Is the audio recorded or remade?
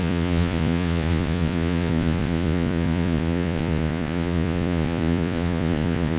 remade